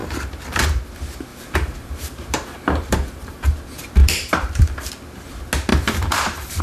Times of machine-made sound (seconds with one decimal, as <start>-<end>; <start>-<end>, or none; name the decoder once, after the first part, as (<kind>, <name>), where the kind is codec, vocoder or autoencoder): 0.0-0.6 (vocoder, BigVGAN v2); 1.3-3.5; 4.0-4.9; 5.7-6.6